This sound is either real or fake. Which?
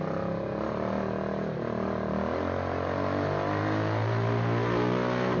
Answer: real